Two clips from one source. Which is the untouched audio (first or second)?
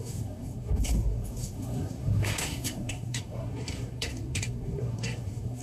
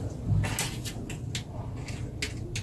second